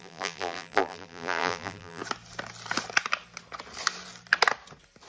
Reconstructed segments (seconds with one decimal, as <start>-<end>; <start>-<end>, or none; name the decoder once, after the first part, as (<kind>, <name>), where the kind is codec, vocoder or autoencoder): 0.0-2.0 (vocoder, BigVGAN v2)